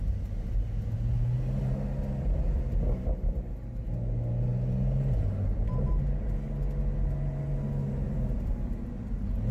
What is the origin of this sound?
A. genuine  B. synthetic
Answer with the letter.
A